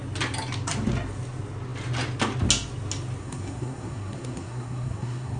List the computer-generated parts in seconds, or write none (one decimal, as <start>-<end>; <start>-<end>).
3.2-5.4